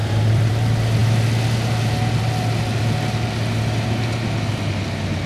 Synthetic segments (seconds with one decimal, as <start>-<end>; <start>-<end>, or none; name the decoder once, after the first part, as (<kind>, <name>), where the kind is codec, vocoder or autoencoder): 0.0-0.5 (vocoder, BigVGAN v2)